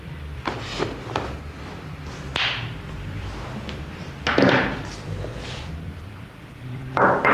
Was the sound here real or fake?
fake